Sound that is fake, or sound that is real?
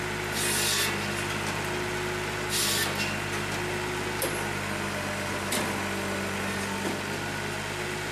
real